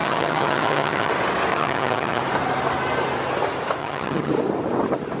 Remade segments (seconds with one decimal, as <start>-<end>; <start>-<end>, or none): 0.0-1.1; 1.5-2.2; 3.8-4.3